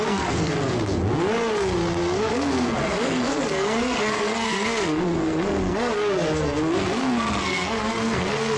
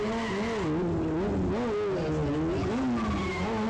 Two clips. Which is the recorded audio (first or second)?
second